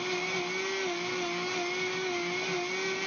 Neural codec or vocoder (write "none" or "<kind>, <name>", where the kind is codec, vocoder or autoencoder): none